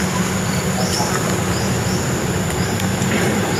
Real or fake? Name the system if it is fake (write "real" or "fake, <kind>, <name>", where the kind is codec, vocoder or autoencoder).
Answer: real